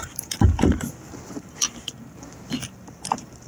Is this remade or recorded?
remade